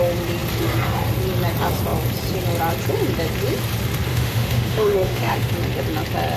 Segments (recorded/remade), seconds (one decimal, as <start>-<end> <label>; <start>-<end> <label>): 0.0-4.1 recorded; 4.1-5.5 remade; 5.5-6.4 recorded